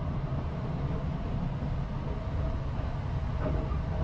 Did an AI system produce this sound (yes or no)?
no